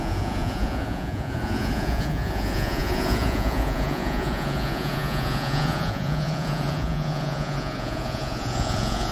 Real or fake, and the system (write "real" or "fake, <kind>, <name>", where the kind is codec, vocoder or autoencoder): fake, vocoder, Vocos